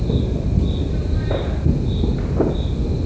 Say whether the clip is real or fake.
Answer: real